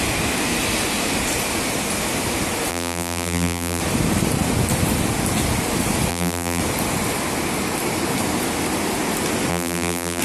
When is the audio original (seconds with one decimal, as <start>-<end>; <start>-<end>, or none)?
0.0-2.7; 3.8-6.1; 6.6-9.5